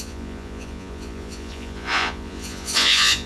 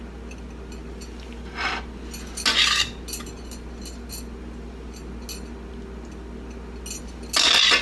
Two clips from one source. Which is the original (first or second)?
second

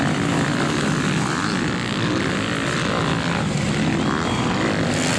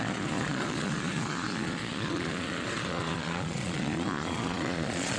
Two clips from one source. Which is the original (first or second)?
first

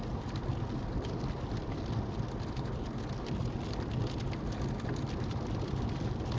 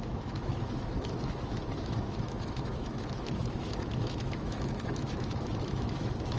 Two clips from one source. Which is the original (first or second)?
first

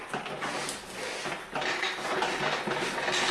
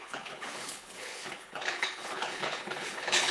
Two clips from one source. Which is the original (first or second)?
first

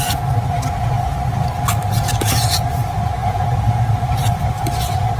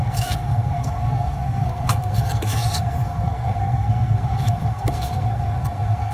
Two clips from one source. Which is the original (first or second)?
first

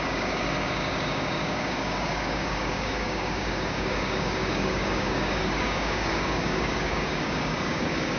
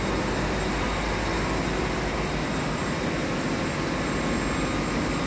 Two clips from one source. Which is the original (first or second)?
second